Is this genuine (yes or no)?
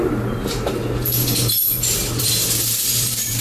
no